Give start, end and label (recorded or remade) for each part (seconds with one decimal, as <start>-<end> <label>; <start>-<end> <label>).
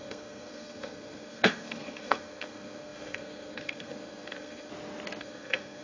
0.0-4.7 remade; 4.7-5.2 recorded; 5.2-5.8 remade